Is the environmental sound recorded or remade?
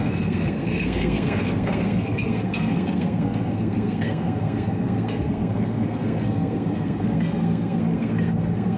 remade